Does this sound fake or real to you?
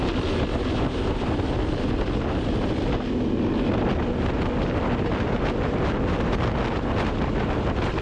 real